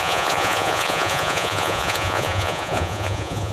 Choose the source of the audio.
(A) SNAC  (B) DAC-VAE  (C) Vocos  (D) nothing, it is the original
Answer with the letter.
C